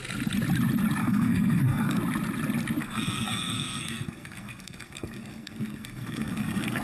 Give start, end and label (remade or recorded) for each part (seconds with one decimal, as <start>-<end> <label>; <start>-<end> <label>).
0.0-1.0 recorded; 1.0-2.0 remade; 2.0-2.8 recorded; 2.8-6.8 remade